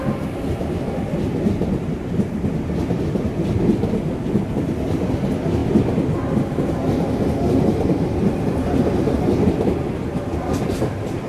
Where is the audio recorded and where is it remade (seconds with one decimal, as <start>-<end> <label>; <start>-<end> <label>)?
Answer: 0.0-11.3 recorded